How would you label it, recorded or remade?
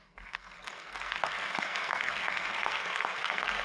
remade